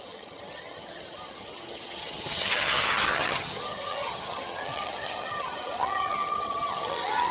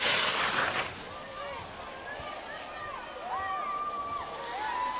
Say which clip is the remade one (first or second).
first